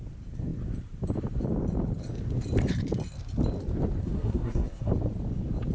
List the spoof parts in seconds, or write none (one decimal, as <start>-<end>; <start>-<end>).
4.0-4.9